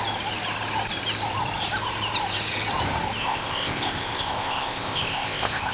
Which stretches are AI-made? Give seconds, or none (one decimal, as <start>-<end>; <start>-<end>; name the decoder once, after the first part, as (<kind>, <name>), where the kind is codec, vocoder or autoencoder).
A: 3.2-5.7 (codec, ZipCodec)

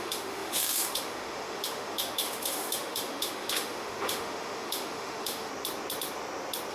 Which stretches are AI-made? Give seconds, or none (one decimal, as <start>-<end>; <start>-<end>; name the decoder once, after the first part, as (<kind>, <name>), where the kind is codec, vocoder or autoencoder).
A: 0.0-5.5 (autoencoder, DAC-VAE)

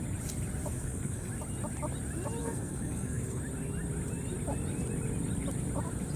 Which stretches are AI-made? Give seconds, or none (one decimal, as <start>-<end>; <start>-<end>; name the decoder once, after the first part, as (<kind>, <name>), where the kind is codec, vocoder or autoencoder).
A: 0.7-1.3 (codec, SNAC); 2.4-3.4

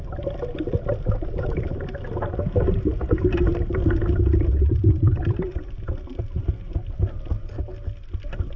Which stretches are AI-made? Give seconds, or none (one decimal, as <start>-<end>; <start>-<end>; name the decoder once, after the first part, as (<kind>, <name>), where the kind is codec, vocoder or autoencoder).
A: 0.0-7.6 (vocoder, BigVGAN v2); 8.2-8.6

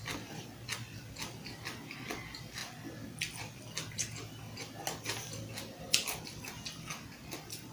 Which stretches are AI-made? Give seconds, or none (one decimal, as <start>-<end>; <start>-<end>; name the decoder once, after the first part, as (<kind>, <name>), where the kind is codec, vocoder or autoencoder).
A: none

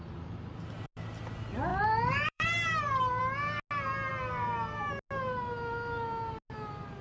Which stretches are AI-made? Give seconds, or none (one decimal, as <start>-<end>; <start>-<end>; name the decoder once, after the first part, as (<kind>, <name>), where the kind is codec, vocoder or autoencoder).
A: 1.7-3.2 (vocoder, BigVGAN v2)

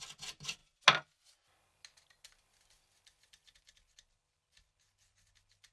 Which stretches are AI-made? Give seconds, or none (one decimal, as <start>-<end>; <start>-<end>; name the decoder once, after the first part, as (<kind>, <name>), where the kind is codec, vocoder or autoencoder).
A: none

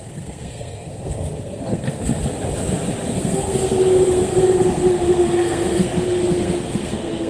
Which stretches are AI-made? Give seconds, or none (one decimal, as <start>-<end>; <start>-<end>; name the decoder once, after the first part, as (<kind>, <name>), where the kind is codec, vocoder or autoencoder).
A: 0.0-2.1 (codec, SNAC); 3.1-7.3